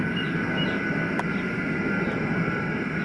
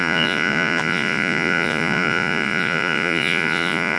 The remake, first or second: second